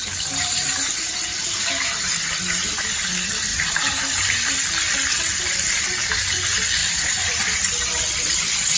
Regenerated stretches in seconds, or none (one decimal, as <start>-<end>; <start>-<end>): 0.0-3.0; 3.5-4.5; 6.8-7.4